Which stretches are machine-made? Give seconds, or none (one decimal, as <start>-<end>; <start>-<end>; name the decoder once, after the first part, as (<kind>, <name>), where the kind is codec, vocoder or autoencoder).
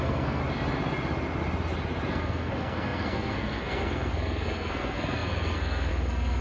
0.0-0.4 (codec, SNAC); 2.1-6.4